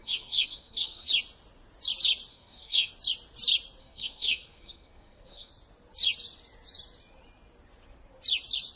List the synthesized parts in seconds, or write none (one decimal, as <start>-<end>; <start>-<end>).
0.0-1.1; 2.3-2.9; 3.8-5.5